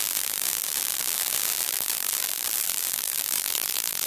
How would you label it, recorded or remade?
remade